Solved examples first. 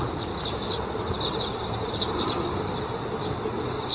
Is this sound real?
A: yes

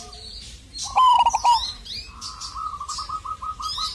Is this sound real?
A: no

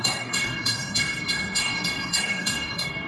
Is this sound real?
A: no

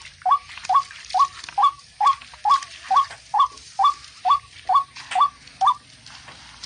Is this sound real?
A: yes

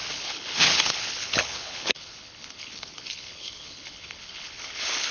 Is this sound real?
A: no